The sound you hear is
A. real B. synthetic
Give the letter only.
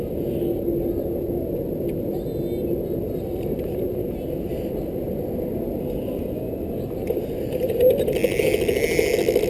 A